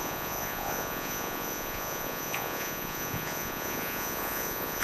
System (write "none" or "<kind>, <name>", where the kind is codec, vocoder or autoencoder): vocoder, Vocos